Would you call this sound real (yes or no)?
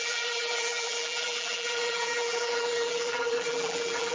no